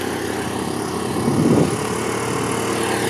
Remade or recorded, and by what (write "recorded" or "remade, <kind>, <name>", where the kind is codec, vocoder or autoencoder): recorded